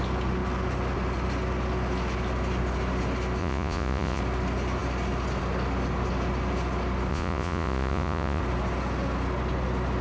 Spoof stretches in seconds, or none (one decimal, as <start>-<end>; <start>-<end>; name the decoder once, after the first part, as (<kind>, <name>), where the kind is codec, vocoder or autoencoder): 3.4-4.2 (vocoder, Vocos); 7.1-8.4